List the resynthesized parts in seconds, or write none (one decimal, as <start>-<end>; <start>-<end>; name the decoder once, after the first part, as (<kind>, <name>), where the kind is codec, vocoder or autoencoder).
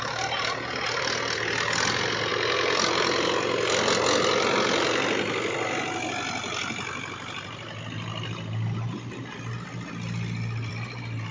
none